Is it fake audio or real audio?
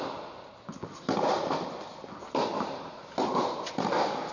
real